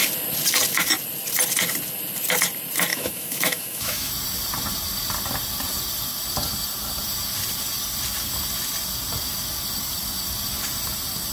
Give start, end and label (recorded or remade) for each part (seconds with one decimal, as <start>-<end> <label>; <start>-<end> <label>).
0.0-2.9 recorded; 2.9-4.1 remade; 4.1-11.3 recorded